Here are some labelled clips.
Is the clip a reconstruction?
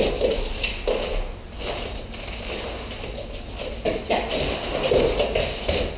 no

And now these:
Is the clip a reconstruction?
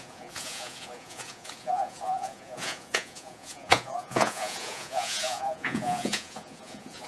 yes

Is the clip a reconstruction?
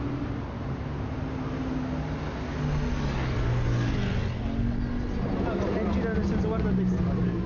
no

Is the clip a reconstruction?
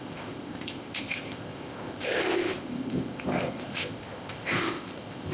yes